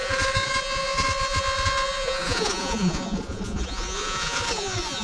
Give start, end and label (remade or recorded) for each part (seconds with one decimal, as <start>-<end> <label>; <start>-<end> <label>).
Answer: 0.0-5.0 remade